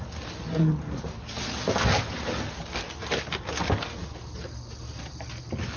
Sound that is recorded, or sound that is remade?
recorded